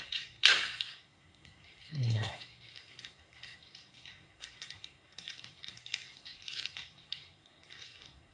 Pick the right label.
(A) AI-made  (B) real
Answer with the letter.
A